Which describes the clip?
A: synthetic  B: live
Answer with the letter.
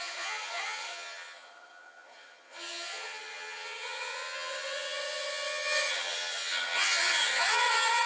A